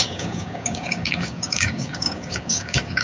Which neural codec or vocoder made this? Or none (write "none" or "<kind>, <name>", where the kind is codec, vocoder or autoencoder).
codec, DAC